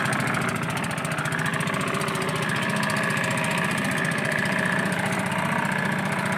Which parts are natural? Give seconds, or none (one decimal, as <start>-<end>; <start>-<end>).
0.0-1.5; 5.3-6.4